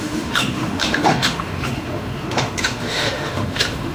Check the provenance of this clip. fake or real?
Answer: fake